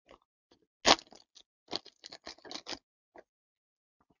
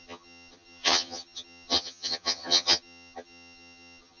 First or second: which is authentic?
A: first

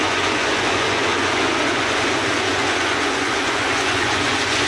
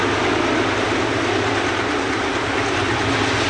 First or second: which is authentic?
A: second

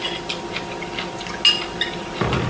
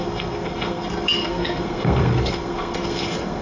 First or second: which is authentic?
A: first